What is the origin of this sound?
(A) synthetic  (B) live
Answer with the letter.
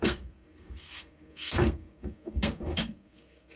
A